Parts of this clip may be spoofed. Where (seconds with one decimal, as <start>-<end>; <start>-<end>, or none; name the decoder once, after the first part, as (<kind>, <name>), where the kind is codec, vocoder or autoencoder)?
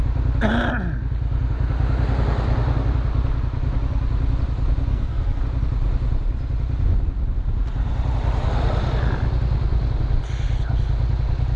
4.9-5.4 (codec, SNAC)